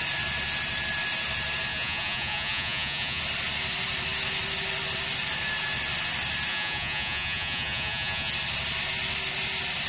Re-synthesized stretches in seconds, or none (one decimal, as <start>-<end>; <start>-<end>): 1.7-3.2; 6.5-8.3